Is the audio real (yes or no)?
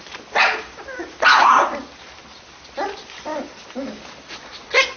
yes